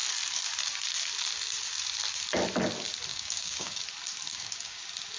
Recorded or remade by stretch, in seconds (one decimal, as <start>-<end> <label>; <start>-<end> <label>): 0.0-3.1 recorded; 3.1-3.8 remade; 3.8-4.3 recorded; 4.3-4.8 remade; 4.8-5.2 recorded